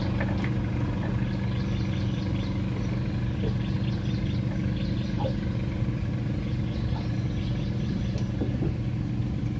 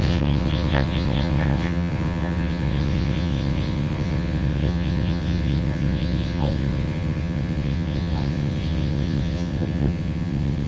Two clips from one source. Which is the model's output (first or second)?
second